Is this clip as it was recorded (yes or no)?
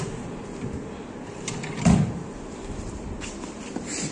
yes